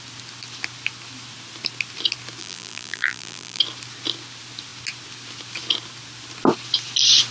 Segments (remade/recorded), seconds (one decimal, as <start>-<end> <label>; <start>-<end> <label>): 0.0-2.4 recorded; 2.4-3.6 remade; 3.6-7.3 recorded